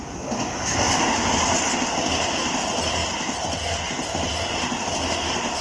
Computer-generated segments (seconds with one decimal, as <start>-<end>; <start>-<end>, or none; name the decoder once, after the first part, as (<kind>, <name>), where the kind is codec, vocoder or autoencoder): none